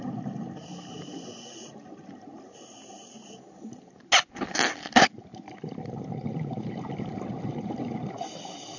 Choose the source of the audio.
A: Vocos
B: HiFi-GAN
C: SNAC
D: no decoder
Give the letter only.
D